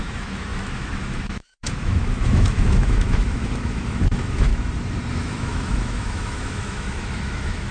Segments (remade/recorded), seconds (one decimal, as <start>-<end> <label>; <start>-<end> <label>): 0.0-4.5 remade; 4.5-5.1 recorded; 5.1-7.7 remade